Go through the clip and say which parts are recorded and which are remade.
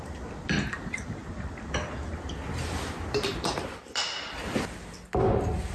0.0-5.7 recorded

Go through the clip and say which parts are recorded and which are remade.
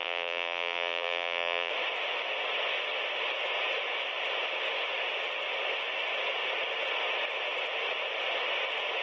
0.0-1.7 remade; 1.7-9.0 recorded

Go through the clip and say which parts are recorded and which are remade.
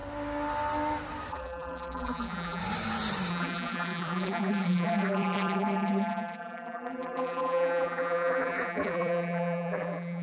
0.0-1.3 recorded; 1.3-2.6 remade; 2.6-3.3 recorded; 3.3-10.2 remade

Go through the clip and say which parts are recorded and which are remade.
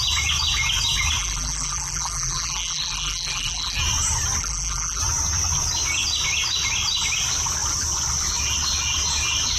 0.0-1.2 recorded; 1.2-3.8 remade; 3.8-4.4 recorded; 4.4-5.0 remade; 5.0-9.6 recorded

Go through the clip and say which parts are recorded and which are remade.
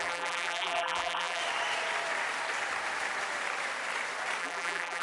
0.0-1.4 remade; 1.4-4.4 recorded; 4.4-5.0 remade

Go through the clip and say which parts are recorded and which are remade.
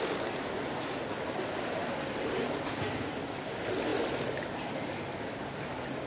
0.0-6.1 recorded